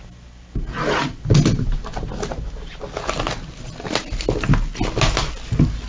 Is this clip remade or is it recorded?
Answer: recorded